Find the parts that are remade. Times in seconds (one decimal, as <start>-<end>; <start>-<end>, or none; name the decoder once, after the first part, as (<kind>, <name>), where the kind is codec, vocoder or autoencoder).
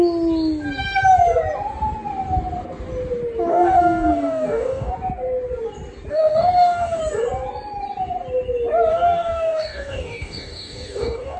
3.5-4.9 (codec, DAC); 6.1-7.0; 8.9-11.4